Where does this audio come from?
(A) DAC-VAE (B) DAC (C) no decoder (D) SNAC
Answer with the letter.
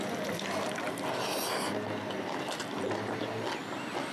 C